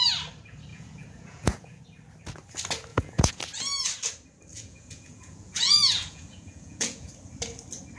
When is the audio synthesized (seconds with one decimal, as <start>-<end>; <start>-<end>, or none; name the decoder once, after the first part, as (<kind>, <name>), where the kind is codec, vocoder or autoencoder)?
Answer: 0.7-1.8 (vocoder, Vocos); 2.9-3.4; 4.5-7.1